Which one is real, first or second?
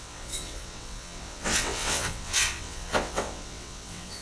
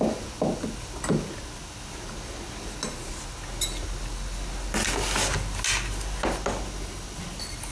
second